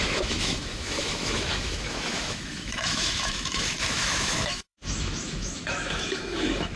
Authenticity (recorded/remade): remade